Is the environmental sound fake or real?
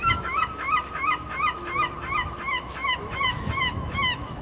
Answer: fake